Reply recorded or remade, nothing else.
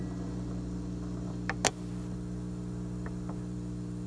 recorded